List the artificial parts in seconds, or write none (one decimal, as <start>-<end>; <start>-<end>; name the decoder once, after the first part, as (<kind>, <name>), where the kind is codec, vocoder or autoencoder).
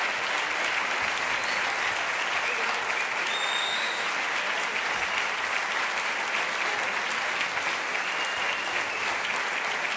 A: 3.6-4.1 (autoencoder, DAC-VAE)